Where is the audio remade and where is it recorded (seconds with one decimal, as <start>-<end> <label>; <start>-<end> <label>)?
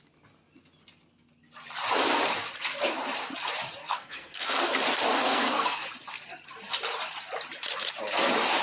0.0-3.8 recorded; 3.8-4.8 remade; 4.8-5.2 recorded; 5.2-5.9 remade; 5.9-8.6 recorded